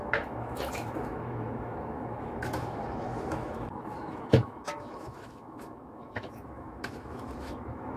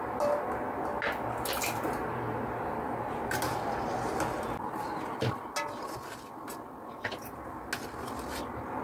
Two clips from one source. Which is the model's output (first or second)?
first